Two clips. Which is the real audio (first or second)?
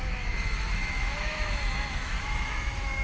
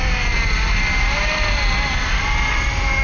second